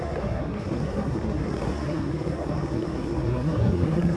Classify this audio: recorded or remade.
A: remade